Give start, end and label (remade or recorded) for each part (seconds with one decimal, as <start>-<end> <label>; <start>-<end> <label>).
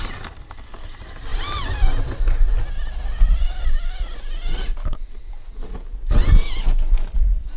0.0-7.6 recorded